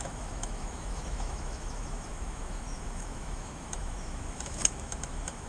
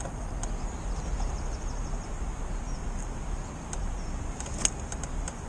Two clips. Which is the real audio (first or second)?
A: second